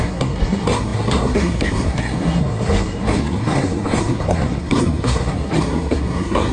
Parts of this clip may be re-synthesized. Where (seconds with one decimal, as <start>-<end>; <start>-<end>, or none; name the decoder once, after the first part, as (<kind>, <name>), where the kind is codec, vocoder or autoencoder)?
0.0-6.5 (codec, SNAC)